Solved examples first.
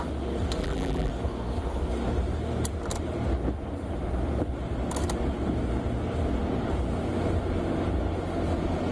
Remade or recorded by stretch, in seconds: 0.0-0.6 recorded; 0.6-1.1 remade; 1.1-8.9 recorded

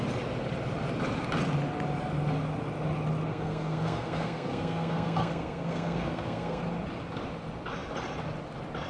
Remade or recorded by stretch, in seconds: 0.0-3.3 recorded; 3.3-6.6 remade; 6.6-8.9 recorded